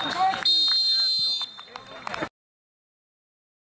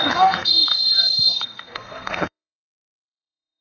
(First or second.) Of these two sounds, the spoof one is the second